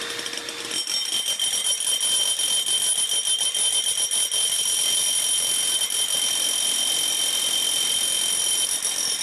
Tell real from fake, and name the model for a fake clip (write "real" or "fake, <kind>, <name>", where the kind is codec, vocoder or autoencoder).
real